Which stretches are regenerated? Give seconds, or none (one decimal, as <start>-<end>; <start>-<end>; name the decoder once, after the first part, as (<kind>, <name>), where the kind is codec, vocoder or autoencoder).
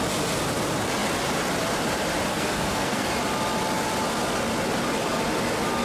2.3-3.1 (codec, SNAC)